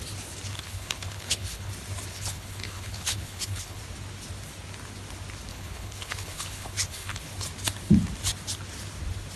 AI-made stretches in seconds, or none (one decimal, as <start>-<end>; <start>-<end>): 0.5-1.7; 2.1-3.8; 5.5-7.3